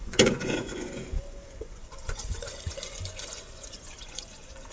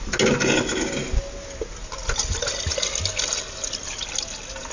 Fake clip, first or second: first